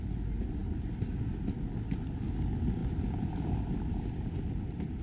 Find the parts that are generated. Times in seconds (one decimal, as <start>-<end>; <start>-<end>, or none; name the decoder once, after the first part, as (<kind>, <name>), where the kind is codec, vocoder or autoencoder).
none